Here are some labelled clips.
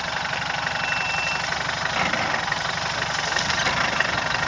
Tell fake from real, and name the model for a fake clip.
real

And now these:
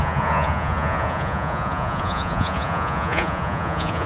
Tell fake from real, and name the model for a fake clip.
fake, vocoder, Vocos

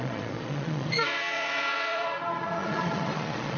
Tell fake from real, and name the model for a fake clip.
fake, vocoder, Vocos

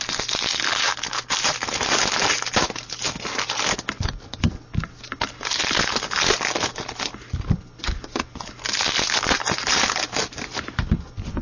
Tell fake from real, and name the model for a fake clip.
real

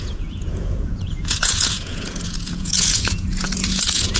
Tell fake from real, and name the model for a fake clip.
fake, vocoder, Vocos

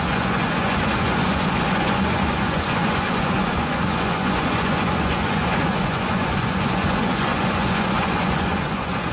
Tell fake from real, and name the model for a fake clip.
fake, vocoder, Vocos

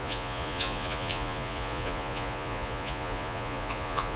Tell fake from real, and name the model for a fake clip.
fake, vocoder, Vocos